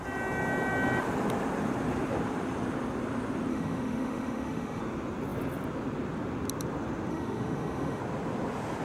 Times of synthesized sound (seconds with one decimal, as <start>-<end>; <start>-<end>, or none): 3.5-4.8; 7.1-8.0